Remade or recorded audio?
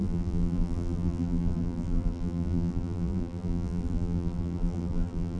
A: remade